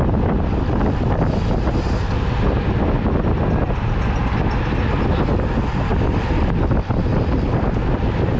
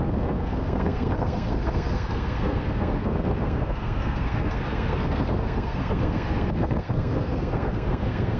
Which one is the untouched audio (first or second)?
first